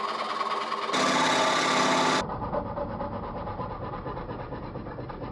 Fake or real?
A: real